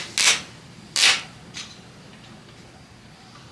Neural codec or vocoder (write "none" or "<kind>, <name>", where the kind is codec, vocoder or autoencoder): none